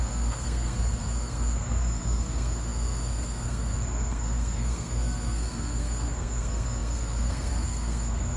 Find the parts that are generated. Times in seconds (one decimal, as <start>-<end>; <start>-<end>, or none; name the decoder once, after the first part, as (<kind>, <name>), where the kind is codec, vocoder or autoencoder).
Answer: 0.0-8.4 (codec, SNAC)